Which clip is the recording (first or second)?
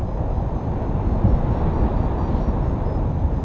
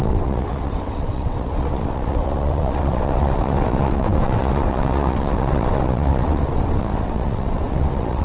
first